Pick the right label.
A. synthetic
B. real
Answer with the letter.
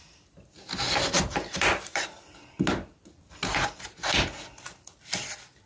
B